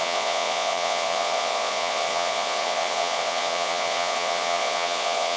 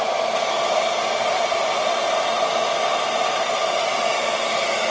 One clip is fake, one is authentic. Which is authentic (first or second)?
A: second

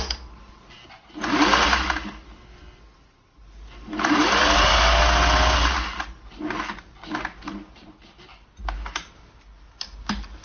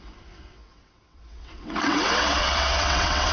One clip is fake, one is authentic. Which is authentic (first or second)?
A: first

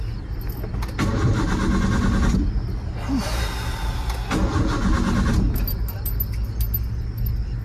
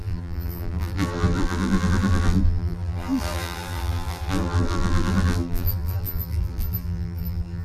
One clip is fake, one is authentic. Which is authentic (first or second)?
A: first